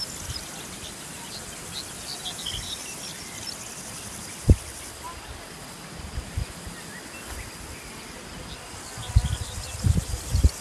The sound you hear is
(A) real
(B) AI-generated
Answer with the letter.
A